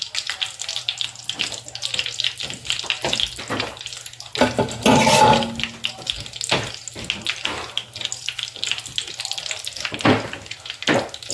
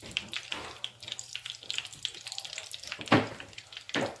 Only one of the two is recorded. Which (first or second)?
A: first